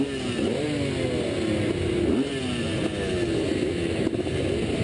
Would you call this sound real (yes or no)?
yes